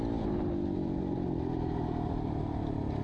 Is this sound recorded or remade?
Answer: recorded